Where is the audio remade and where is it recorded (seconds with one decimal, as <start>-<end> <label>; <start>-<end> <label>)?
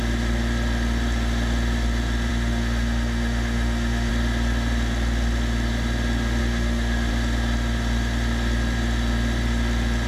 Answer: 0.0-2.3 recorded; 2.3-4.1 remade; 4.1-6.4 recorded; 6.4-7.1 remade; 7.1-10.1 recorded